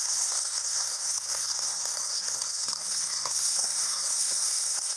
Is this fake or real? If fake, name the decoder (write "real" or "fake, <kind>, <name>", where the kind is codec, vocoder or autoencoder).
fake, codec, SNAC